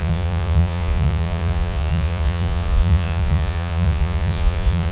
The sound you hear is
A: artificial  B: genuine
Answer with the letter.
A